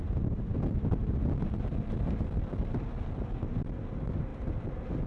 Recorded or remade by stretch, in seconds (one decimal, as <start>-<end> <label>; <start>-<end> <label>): 0.0-5.1 recorded